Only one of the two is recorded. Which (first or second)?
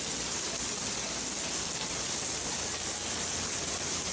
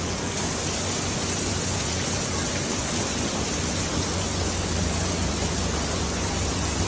first